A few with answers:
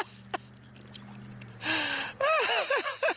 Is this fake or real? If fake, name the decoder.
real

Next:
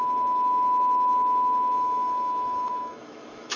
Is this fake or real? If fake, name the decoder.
fake, autoencoder, DAC-VAE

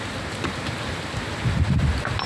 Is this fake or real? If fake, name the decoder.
real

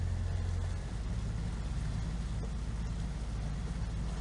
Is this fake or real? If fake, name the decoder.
real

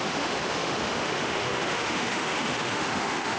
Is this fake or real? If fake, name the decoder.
fake, autoencoder, DAC-VAE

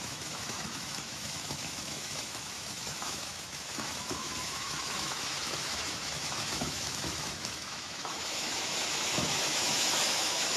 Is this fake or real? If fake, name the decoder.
fake, autoencoder, DAC-VAE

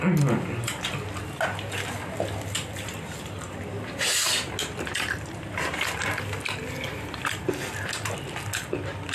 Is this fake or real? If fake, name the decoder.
real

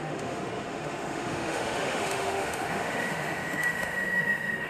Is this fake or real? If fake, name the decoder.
fake, autoencoder, DAC-VAE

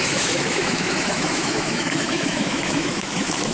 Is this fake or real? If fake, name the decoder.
fake, autoencoder, DAC-VAE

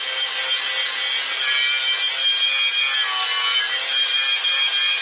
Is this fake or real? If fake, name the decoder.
real